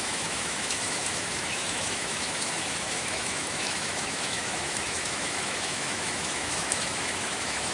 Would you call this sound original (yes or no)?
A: no